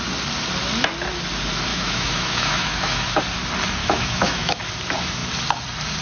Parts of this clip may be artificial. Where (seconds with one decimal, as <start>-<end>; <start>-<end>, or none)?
1.7-3.2; 3.8-4.6